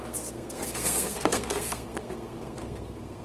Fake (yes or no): yes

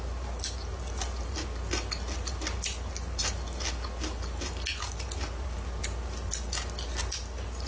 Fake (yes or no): no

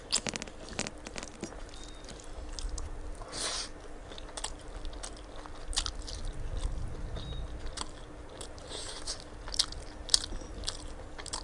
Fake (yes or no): no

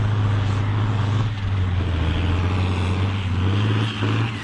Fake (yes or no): no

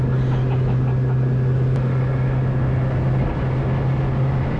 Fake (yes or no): no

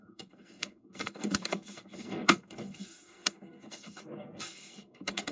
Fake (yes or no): yes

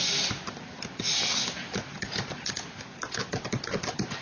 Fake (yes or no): no